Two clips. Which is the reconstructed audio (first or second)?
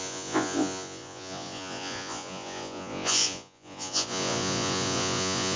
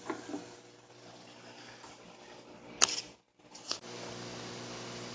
first